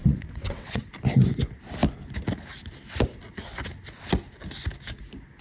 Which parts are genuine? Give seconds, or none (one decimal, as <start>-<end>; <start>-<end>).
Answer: 0.9-5.4